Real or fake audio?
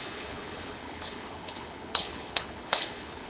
fake